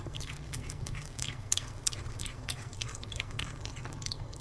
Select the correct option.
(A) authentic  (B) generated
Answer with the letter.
B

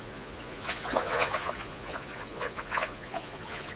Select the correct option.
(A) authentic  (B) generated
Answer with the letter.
B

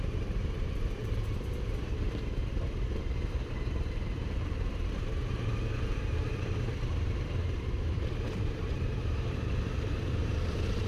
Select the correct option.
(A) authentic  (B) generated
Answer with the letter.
B